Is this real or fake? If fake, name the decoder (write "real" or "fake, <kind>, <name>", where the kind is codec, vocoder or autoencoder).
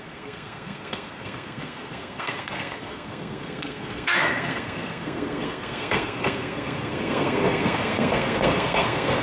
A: fake, codec, SNAC